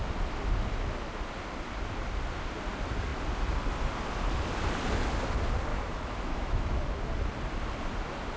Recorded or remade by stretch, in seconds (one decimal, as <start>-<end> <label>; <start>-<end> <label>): 0.0-5.7 recorded; 5.7-6.7 remade; 6.7-8.4 recorded